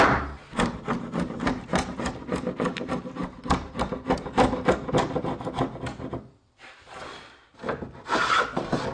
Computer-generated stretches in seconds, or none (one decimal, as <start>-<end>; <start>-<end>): none